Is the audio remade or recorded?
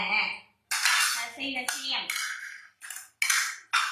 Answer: recorded